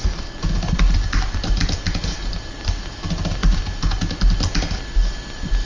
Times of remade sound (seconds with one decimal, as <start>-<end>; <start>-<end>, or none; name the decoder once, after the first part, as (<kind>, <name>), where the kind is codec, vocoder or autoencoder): none